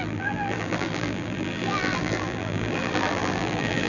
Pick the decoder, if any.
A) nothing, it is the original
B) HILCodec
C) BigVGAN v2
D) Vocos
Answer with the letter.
C